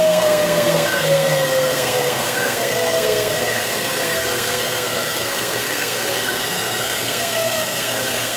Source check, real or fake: fake